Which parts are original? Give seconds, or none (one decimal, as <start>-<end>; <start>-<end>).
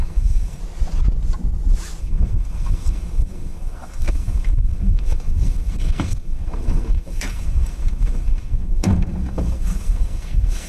0.6-2.0